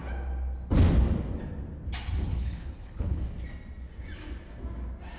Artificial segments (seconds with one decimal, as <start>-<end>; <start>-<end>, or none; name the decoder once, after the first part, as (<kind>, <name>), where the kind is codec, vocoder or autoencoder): 2.3-3.2 (codec, HILCodec)